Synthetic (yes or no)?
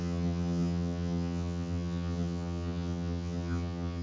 yes